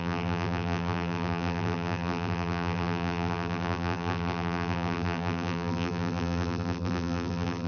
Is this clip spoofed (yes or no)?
yes